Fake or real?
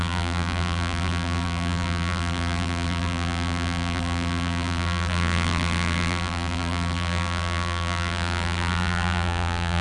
fake